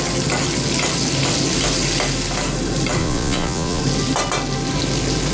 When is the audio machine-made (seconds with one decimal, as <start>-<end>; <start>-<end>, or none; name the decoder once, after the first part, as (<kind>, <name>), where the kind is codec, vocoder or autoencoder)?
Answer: 3.0-3.8 (vocoder, Vocos)